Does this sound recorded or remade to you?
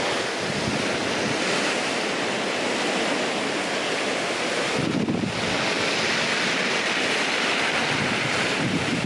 recorded